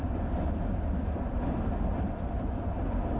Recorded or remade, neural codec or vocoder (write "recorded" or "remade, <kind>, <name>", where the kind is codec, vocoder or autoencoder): recorded